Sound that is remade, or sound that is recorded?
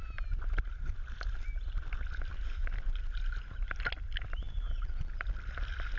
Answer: recorded